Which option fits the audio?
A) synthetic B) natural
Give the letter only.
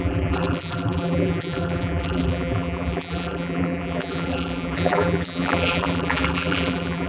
A